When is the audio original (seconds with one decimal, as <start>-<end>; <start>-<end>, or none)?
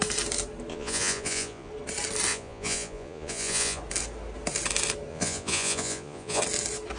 0.0-0.7; 1.7-2.3; 3.8-5.1; 6.4-7.0